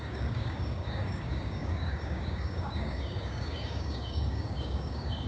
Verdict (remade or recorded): remade